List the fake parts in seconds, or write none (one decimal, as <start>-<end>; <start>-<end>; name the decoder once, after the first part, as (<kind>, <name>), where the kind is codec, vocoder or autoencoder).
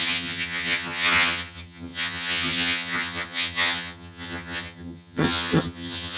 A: 0.0-6.2 (vocoder, HiFi-GAN)